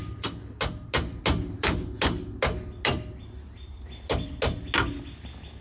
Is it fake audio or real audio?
real